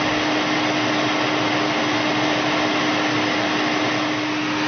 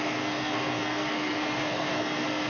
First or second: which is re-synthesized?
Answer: second